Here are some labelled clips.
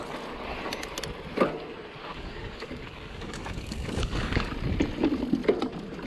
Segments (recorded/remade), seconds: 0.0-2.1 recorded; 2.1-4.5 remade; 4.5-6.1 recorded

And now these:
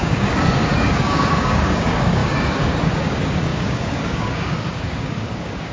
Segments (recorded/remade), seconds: 0.0-5.7 remade

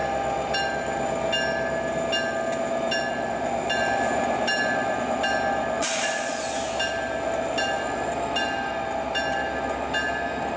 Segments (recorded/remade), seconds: 0.0-5.8 recorded; 5.8-6.4 remade; 6.4-10.6 recorded

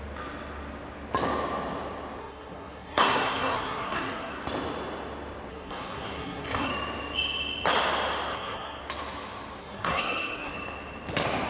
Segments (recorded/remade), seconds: 0.0-2.2 recorded; 2.2-4.3 remade; 4.3-5.5 recorded; 5.5-6.7 remade; 6.7-8.3 recorded; 8.3-8.8 remade; 8.8-9.6 recorded; 9.6-10.5 remade; 10.5-11.5 recorded